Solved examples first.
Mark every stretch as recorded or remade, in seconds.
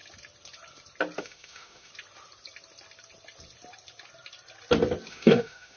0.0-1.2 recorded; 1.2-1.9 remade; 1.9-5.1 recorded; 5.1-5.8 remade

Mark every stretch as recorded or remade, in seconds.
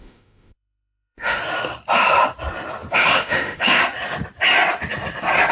0.0-1.4 remade; 1.4-2.9 recorded; 2.9-3.8 remade; 3.8-5.5 recorded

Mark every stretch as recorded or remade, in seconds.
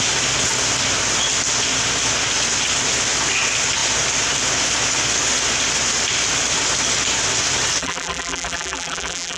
0.0-7.8 recorded; 7.8-9.4 remade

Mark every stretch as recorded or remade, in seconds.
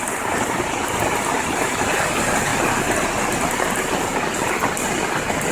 0.0-5.5 recorded